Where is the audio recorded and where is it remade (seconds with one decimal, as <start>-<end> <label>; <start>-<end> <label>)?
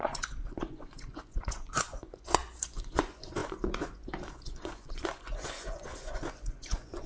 0.0-7.1 remade